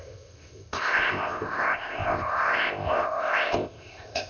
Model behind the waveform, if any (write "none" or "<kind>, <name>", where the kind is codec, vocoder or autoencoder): codec, ZipCodec